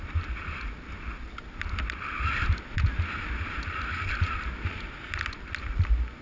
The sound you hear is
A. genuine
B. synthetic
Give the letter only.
A